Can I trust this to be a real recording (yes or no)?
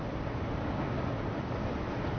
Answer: yes